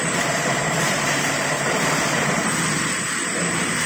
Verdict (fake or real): fake